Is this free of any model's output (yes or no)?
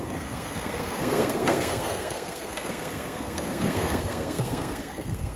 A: no